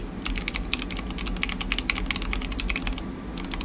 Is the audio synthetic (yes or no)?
no